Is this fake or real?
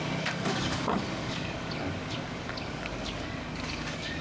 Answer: fake